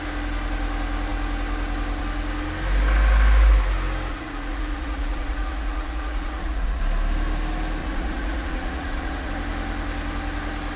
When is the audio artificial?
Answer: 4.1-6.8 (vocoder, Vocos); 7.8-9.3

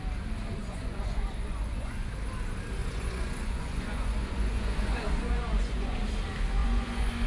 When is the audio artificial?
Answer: 0.6-2.1 (vocoder, Vocos); 2.8-6.0; 6.6-7.3

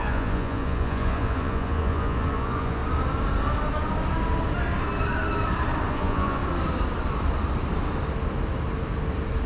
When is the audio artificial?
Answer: 0.0-2.8 (vocoder, Vocos); 5.9-6.4